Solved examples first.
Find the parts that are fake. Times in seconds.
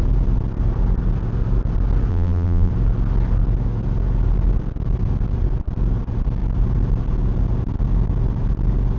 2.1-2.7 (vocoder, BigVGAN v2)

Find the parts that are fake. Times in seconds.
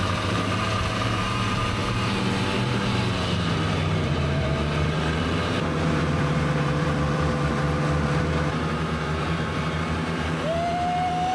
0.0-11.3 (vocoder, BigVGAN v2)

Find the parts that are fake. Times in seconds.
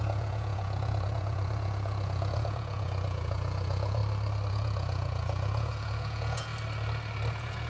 0.0-4.0 (vocoder, Vocos); 4.5-6.5; 7.3-7.7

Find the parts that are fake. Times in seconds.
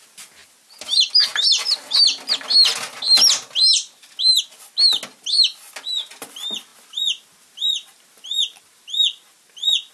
none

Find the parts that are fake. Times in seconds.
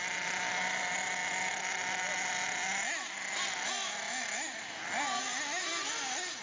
none